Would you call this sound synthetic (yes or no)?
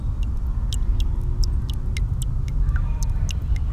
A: no